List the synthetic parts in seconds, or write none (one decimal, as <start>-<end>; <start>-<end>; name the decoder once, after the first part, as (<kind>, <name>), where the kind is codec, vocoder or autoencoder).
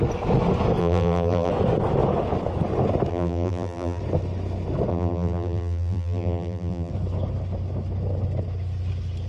0.8-1.5 (vocoder, BigVGAN v2); 3.1-4.0; 4.9-6.9